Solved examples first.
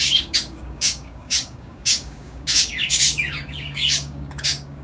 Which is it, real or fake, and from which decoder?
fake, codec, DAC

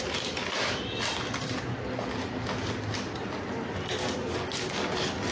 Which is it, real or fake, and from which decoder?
real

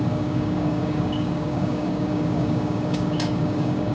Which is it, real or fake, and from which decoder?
fake, codec, DAC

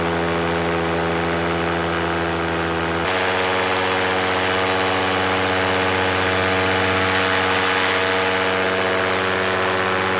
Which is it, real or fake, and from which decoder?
real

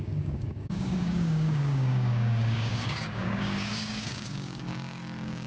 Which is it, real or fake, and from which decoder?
fake, codec, DAC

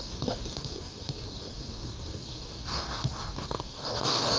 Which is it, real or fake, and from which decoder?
fake, codec, DAC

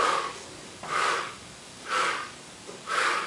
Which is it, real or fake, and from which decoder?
fake, codec, DAC